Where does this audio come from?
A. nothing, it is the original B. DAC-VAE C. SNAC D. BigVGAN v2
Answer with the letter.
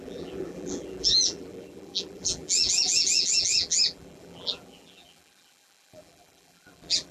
D